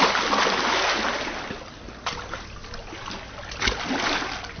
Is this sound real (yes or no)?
yes